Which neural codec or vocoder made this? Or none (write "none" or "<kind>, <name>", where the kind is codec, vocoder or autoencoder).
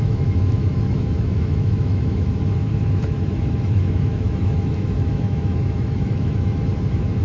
autoencoder, DAC-VAE